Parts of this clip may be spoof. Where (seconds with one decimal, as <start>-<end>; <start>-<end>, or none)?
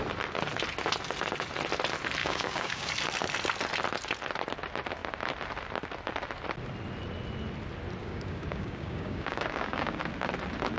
2.2-2.9; 8.0-10.0